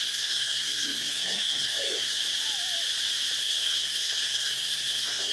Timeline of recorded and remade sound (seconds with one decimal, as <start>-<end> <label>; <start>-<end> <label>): 0.0-2.2 remade; 2.2-3.4 recorded; 3.4-5.3 remade